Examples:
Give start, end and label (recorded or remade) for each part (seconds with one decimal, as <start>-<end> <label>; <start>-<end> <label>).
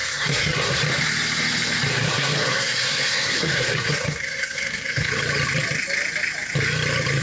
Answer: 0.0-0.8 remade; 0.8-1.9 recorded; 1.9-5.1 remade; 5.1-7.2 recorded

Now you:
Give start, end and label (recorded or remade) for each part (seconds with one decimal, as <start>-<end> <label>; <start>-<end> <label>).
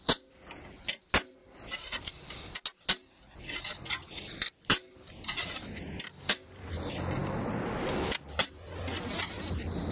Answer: 0.0-9.9 recorded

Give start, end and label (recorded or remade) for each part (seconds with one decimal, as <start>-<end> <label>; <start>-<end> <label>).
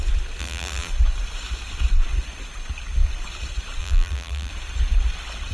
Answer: 0.0-0.4 recorded; 0.4-0.9 remade; 0.9-3.8 recorded; 3.8-4.5 remade; 4.5-5.5 recorded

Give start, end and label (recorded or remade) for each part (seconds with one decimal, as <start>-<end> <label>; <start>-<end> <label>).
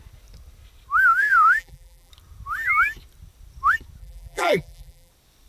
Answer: 0.0-1.0 recorded; 1.0-2.1 remade; 2.1-4.0 recorded; 4.0-5.1 remade; 5.1-5.5 recorded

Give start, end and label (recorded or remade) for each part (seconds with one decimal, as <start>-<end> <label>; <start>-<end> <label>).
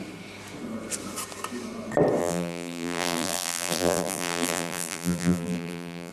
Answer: 0.0-2.2 recorded; 2.2-6.1 remade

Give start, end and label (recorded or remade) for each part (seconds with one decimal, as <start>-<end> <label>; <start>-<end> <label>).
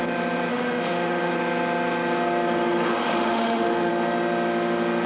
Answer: 0.0-0.5 recorded; 0.5-1.3 remade; 1.3-2.9 recorded; 2.9-3.9 remade; 3.9-5.1 recorded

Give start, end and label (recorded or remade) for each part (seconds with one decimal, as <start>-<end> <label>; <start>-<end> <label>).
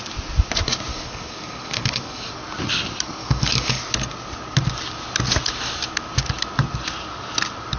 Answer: 0.0-0.9 recorded; 0.9-2.3 remade; 2.3-3.2 recorded; 3.2-3.8 remade; 3.8-7.8 recorded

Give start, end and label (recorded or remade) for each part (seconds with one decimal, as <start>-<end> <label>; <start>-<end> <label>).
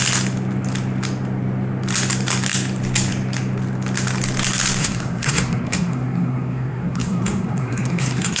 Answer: 0.0-4.8 recorded; 4.8-8.4 remade